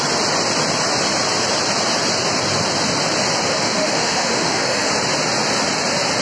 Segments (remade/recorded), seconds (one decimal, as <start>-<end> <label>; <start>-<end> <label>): 0.0-3.5 recorded; 3.5-4.9 remade; 4.9-6.2 recorded